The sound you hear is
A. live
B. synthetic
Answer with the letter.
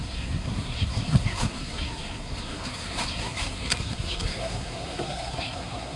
B